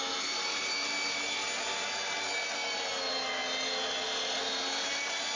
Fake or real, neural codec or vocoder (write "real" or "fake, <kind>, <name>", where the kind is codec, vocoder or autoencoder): real